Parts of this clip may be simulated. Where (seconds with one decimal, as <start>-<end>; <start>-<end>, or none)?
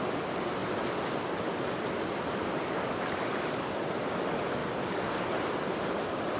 none